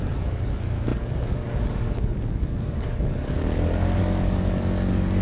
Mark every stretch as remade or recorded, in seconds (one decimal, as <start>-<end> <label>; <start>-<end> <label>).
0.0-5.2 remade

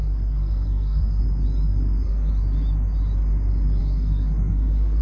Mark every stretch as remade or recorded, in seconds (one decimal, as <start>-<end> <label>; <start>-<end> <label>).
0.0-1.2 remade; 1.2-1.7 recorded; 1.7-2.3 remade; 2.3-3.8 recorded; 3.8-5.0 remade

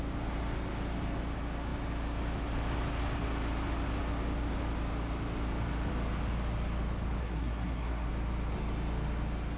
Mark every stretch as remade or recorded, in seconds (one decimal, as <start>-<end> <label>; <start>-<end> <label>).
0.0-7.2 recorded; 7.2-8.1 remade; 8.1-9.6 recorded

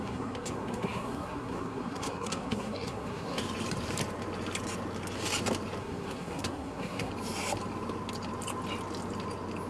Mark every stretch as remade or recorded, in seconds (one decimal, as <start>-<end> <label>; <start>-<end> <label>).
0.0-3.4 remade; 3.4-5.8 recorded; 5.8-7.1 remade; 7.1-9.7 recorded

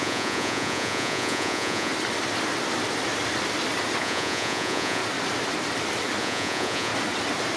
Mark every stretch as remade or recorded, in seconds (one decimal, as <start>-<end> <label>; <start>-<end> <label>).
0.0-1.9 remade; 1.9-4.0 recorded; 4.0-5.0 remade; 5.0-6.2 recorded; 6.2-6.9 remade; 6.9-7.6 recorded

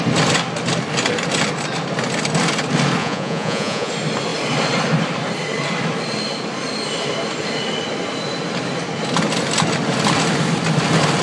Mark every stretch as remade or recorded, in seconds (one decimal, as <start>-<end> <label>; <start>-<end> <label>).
0.0-3.0 recorded; 3.0-3.9 remade; 3.9-11.2 recorded

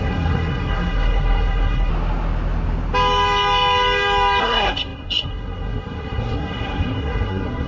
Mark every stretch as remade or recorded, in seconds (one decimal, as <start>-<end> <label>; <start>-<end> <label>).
0.0-1.9 remade; 1.9-4.4 recorded; 4.4-7.7 remade